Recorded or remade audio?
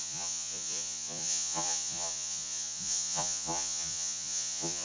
remade